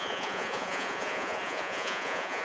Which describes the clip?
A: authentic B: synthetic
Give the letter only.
B